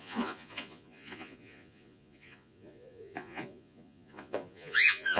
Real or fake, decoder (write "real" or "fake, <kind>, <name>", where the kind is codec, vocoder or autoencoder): fake, vocoder, Vocos